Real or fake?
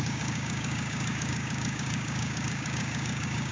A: fake